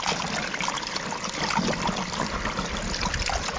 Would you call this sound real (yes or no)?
yes